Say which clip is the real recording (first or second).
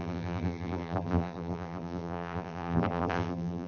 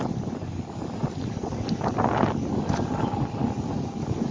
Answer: second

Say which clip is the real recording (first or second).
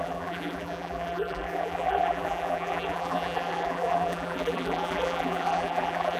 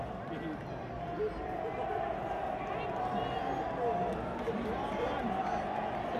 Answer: second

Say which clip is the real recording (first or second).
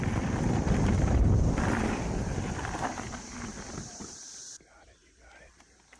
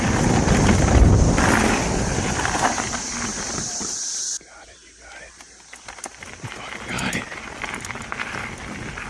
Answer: second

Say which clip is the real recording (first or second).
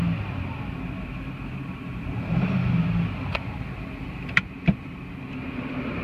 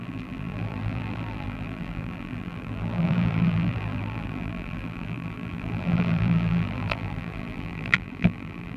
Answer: first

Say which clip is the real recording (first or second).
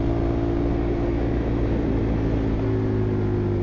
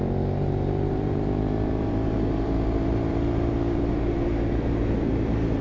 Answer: first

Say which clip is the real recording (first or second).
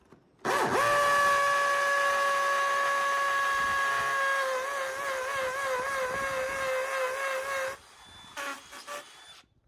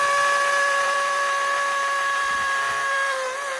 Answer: first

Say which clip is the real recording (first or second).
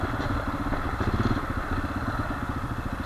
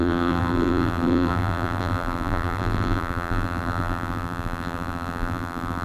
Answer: first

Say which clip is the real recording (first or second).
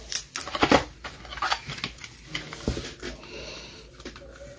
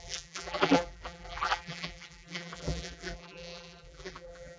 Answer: first